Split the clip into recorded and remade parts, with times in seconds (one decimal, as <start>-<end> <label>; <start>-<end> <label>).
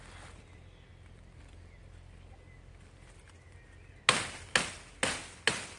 0.0-5.8 recorded